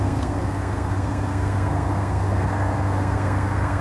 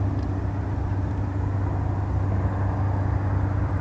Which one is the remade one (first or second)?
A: first